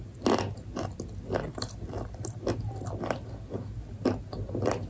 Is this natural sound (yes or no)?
yes